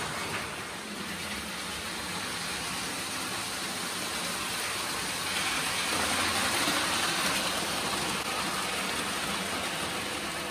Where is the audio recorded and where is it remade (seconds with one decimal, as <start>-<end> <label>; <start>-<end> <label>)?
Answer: 0.0-10.5 recorded